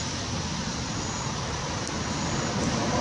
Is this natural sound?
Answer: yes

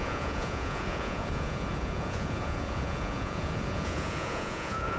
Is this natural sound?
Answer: no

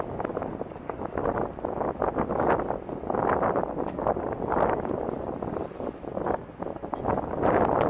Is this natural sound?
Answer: yes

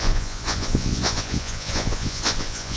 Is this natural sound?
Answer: no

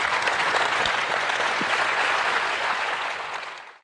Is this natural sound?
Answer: no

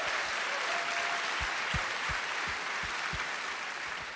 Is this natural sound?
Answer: yes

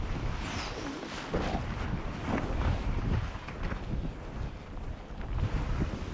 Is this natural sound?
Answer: yes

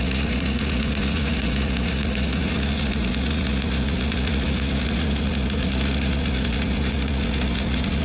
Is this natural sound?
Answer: no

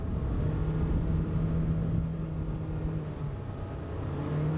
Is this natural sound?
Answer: yes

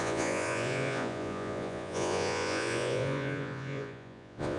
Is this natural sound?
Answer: no